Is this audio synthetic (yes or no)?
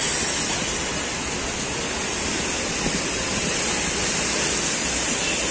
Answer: no